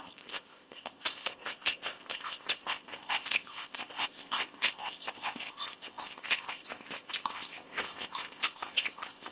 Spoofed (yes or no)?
yes